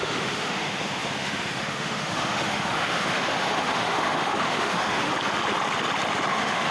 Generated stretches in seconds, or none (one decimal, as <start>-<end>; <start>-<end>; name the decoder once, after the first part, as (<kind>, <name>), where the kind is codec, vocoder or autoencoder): 0.0-5.1 (autoencoder, DAC-VAE); 6.3-6.7